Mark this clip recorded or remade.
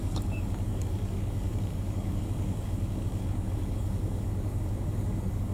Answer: remade